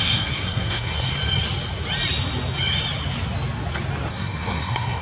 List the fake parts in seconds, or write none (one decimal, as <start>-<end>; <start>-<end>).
0.0-1.1; 4.1-5.0